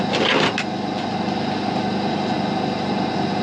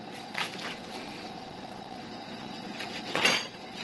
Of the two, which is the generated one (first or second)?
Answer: second